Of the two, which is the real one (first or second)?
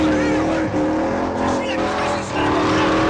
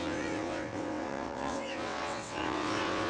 first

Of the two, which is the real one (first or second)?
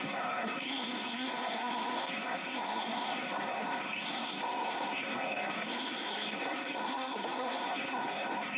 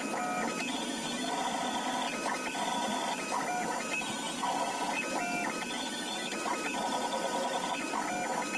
second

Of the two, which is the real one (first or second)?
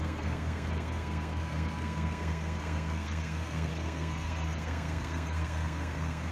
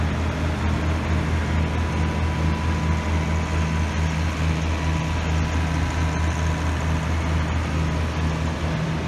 second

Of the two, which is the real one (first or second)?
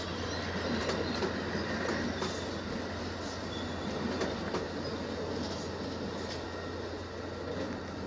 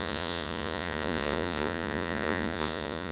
first